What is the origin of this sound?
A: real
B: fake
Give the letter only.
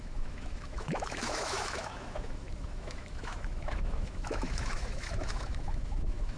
B